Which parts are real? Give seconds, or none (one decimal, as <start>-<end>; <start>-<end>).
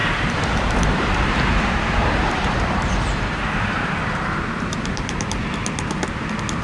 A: 5.4-6.6